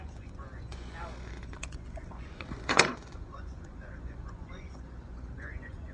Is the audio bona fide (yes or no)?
no